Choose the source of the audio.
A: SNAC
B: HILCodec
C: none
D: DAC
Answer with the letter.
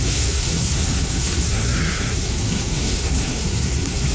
A